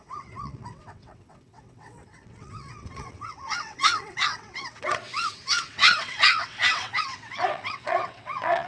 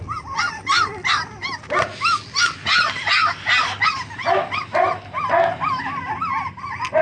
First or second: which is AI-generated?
first